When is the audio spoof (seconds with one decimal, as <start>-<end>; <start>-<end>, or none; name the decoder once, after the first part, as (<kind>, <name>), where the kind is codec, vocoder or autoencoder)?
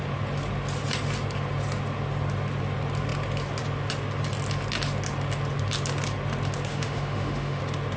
6.7-7.6 (autoencoder, DAC-VAE)